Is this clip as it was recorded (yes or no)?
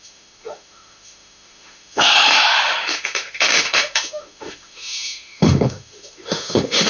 no